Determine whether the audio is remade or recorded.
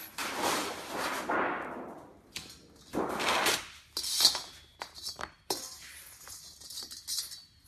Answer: recorded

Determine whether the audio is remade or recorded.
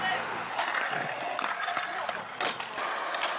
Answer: recorded